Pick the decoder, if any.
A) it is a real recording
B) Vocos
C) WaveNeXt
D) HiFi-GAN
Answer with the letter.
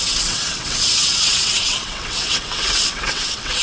C